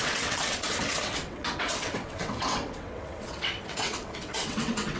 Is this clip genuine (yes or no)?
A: no